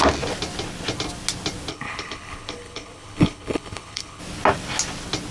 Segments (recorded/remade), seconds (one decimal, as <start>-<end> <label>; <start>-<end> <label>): 0.0-1.7 recorded; 1.7-4.2 remade; 4.2-5.3 recorded